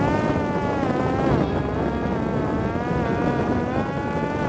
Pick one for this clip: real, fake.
real